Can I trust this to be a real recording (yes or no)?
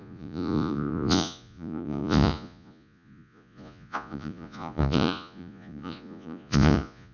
no